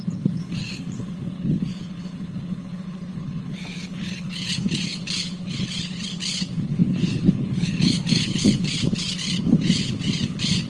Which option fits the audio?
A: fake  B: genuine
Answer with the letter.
A